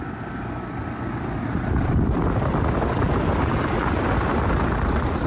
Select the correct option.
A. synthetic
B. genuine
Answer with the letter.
B